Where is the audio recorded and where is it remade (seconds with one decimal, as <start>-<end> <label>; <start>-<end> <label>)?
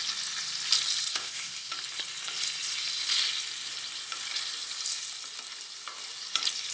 0.0-1.1 recorded; 1.1-1.7 remade; 1.7-6.7 recorded